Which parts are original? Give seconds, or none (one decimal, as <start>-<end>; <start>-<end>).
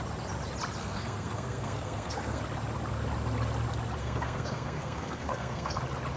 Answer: 0.0-0.8; 2.4-4.0; 5.8-6.2